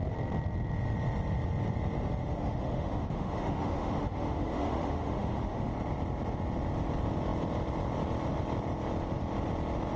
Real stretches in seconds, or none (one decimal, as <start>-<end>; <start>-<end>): 0.0-2.2; 5.7-10.0